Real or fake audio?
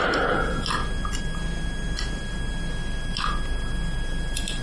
real